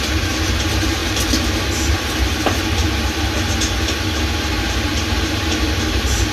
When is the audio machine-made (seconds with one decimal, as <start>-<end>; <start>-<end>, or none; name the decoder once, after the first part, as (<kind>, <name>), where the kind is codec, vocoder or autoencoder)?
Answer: 0.0-2.8 (vocoder, BigVGAN v2); 4.5-6.3